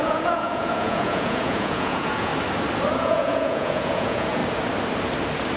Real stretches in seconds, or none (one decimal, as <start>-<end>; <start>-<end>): 2.3-3.0; 4.4-5.6